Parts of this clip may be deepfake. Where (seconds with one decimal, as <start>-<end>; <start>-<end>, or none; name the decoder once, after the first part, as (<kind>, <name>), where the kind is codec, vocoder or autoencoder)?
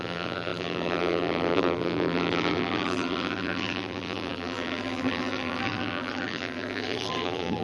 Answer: 0.0-7.6 (vocoder, BigVGAN v2)